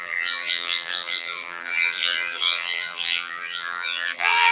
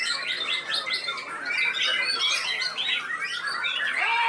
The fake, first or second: first